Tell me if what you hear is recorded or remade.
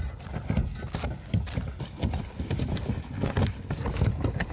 recorded